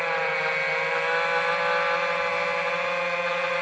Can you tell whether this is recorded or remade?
recorded